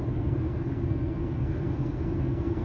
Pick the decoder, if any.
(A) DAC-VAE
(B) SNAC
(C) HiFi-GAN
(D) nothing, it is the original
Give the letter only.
B